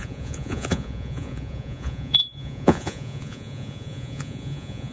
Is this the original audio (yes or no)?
no